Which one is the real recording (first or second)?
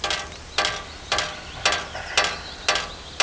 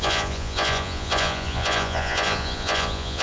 first